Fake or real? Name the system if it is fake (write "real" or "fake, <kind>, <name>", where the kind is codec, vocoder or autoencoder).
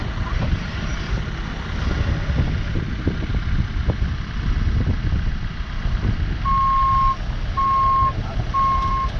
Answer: real